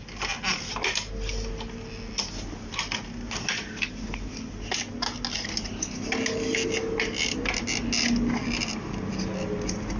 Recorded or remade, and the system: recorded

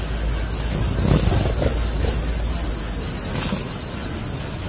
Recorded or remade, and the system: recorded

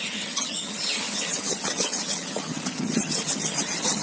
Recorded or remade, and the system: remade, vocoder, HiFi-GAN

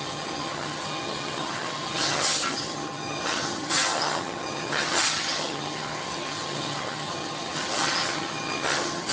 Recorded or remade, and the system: remade, vocoder, HiFi-GAN